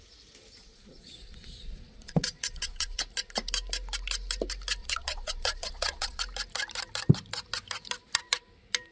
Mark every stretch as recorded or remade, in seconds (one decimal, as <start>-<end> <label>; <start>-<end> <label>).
0.0-0.6 recorded; 0.6-3.0 remade; 3.0-4.8 recorded; 4.8-6.2 remade; 6.2-8.9 recorded